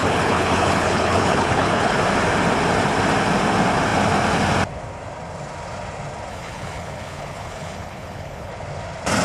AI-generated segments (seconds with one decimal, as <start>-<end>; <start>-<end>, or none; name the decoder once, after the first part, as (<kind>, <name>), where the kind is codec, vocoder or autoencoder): 0.0-2.0 (codec, HILCodec); 6.3-8.5